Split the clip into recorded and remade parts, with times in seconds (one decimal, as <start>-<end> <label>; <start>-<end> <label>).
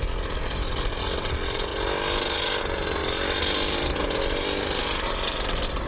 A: 0.0-3.0 recorded; 3.0-5.9 remade